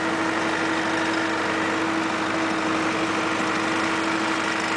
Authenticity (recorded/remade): recorded